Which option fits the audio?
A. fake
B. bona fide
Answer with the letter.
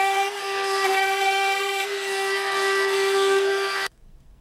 A